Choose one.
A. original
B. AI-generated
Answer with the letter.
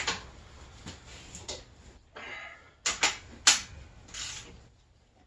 A